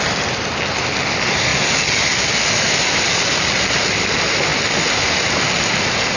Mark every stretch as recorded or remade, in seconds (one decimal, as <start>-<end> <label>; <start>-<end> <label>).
0.0-6.2 recorded